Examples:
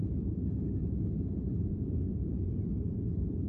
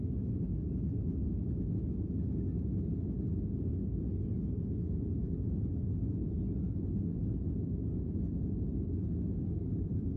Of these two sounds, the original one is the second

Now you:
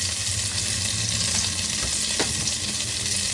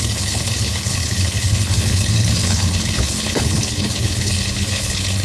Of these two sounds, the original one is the first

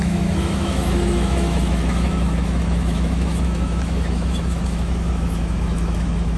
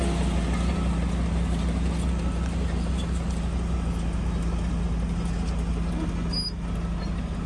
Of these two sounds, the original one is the second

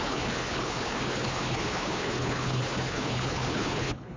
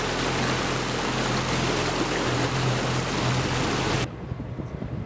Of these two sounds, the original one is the second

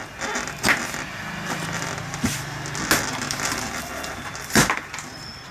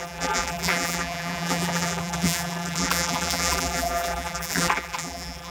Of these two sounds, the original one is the first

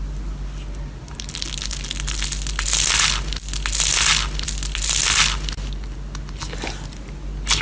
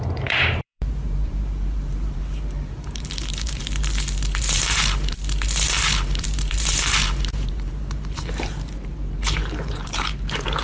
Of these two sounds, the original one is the first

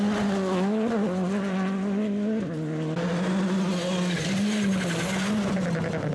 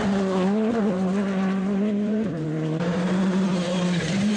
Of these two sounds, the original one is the first